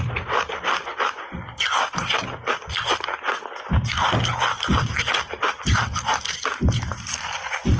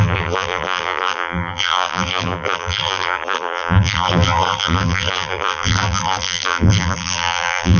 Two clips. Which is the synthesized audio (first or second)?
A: second